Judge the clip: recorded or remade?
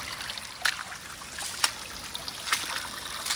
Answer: recorded